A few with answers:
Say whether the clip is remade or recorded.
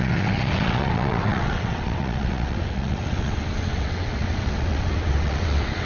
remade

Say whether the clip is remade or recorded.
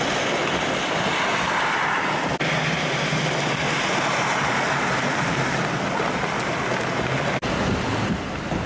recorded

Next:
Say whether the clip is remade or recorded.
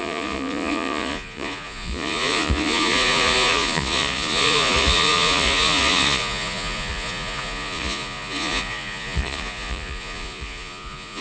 remade